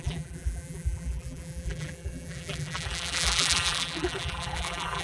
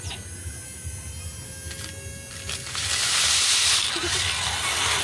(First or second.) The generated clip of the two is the first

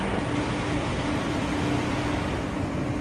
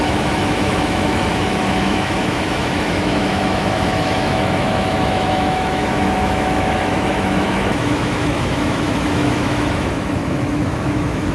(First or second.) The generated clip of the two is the second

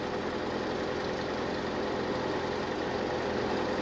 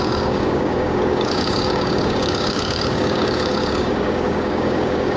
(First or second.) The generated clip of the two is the second